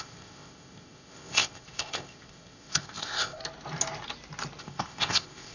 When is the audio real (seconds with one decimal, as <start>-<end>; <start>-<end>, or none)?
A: 3.4-4.6